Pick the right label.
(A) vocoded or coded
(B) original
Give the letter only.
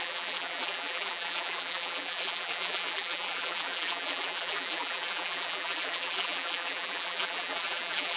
A